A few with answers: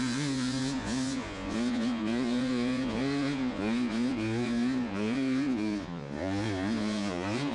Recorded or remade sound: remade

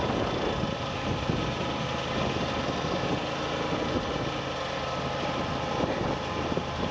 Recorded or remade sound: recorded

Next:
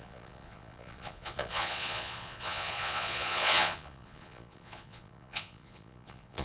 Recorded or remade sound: remade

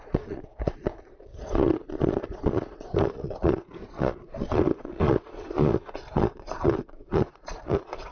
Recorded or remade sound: remade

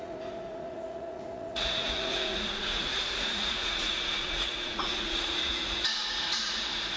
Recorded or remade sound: remade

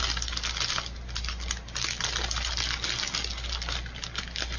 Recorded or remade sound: recorded